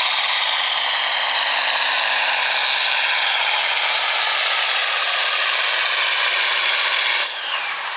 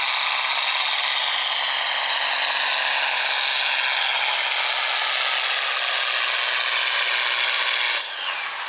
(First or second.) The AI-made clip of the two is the first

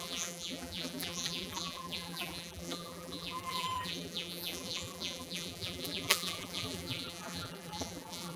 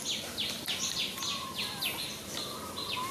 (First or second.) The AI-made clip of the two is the first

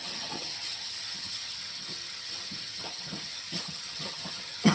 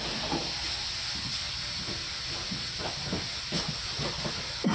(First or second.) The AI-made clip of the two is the first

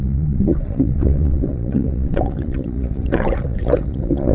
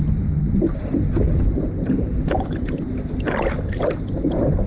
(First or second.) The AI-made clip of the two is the first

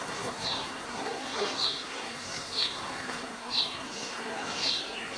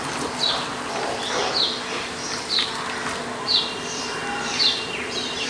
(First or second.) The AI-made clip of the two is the first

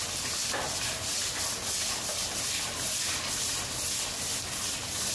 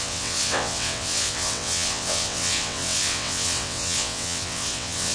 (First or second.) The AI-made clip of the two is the second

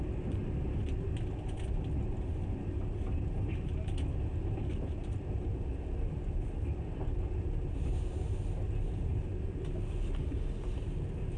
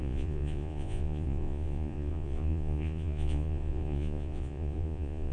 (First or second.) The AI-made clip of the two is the second